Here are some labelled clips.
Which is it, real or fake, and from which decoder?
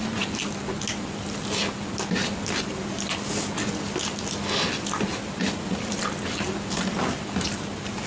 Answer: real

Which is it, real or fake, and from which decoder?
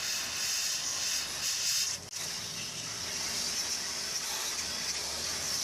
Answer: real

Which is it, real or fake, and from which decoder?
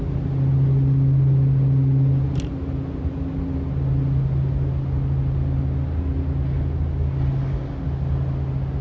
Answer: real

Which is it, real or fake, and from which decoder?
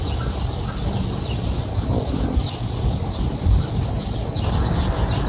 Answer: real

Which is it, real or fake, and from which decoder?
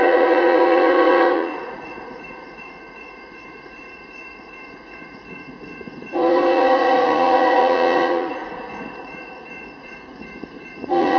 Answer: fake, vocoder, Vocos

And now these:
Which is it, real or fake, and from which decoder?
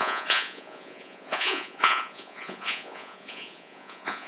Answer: fake, vocoder, Vocos